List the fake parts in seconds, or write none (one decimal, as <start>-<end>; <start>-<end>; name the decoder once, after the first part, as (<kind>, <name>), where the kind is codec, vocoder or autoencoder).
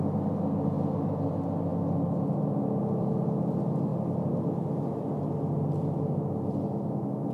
none